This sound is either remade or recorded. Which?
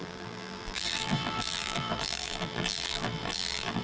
remade